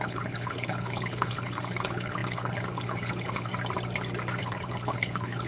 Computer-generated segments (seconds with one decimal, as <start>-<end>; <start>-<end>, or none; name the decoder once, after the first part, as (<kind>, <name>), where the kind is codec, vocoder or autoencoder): 0.0-3.5 (codec, HILCodec); 4.4-5.5